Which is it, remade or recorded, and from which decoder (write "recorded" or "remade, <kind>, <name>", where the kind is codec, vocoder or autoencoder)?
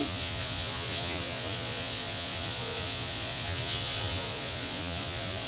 remade, vocoder, Vocos